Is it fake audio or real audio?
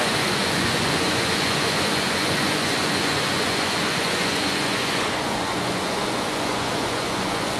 fake